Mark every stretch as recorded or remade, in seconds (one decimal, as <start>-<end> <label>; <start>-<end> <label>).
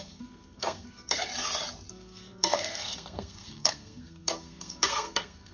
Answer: 0.0-1.3 remade; 1.3-1.9 recorded; 1.9-5.5 remade